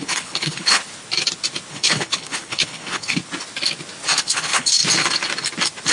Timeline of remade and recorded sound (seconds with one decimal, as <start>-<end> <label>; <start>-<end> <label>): 0.0-0.8 remade; 0.8-1.7 recorded; 1.7-3.2 remade; 3.2-4.2 recorded; 4.2-4.8 remade; 4.8-5.9 recorded